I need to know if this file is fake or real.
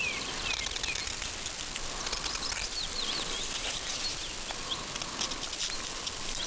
real